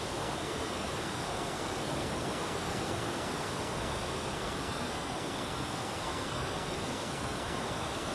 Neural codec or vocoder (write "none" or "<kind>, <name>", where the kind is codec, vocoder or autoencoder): codec, SNAC